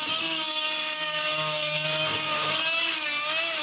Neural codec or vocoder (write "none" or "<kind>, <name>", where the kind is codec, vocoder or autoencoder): codec, DAC